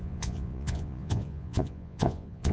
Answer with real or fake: fake